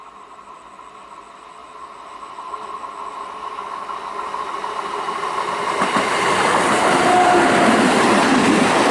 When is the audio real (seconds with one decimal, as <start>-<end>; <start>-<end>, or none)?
0.0-8.9